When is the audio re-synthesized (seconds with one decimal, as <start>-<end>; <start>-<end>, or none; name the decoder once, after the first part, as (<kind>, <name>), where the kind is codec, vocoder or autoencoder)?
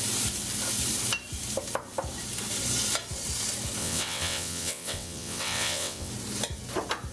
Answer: 3.8-6.1 (vocoder, WaveNeXt)